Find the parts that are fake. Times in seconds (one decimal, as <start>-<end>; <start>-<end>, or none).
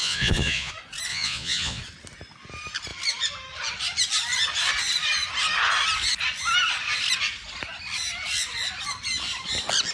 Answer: 0.0-0.7; 1.1-1.8